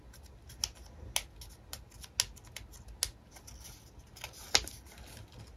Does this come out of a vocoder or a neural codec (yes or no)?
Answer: no